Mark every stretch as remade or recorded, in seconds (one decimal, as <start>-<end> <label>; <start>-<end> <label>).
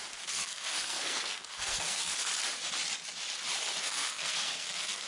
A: 0.0-2.3 remade; 2.3-3.8 recorded; 3.8-5.1 remade